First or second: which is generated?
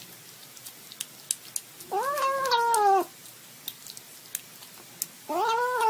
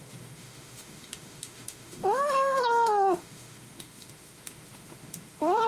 second